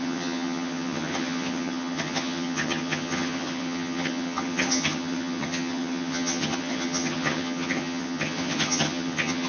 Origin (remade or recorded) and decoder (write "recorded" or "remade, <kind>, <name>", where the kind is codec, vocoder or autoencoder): remade, vocoder, HiFi-GAN